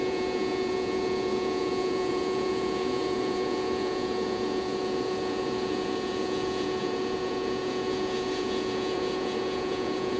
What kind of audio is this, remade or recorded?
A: remade